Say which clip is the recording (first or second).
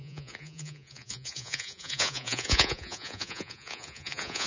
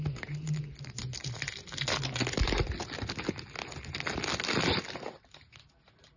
second